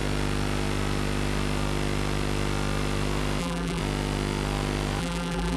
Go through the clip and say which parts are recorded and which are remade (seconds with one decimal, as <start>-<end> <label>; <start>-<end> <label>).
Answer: 0.0-3.4 recorded; 3.4-3.8 remade; 3.8-5.0 recorded; 5.0-5.6 remade